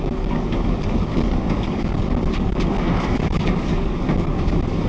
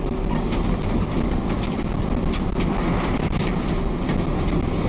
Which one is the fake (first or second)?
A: first